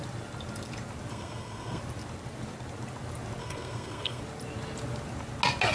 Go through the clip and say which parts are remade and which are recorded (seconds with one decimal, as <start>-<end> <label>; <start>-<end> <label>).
0.0-1.1 recorded; 1.1-1.8 remade; 1.8-3.4 recorded; 3.4-4.2 remade; 4.2-5.7 recorded